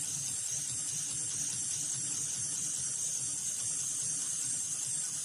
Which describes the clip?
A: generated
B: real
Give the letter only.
B